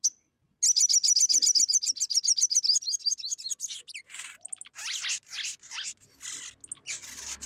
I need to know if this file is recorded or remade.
recorded